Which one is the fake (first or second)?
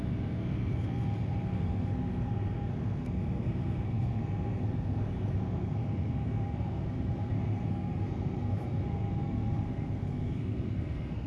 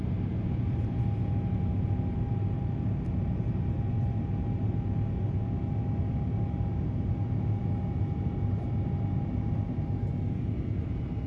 first